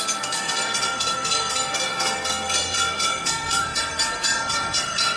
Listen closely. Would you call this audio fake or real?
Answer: fake